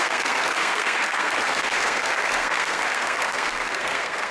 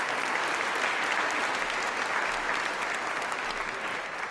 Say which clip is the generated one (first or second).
first